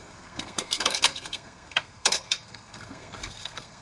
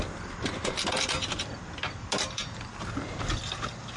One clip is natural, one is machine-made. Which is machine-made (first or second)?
first